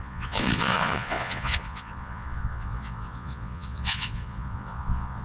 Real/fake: fake